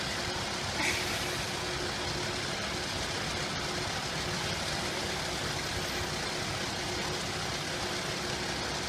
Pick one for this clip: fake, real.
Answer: real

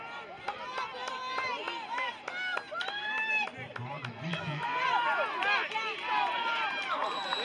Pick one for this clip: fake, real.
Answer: real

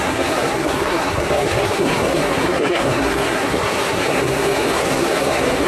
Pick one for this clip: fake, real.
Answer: fake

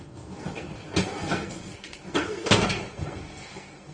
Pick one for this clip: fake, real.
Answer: fake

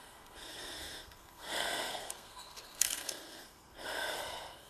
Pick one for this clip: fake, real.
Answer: fake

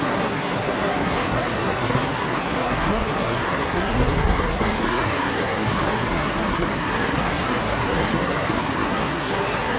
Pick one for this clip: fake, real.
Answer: fake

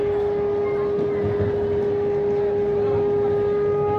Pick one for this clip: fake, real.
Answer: real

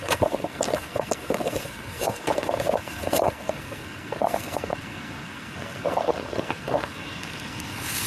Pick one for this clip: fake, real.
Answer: fake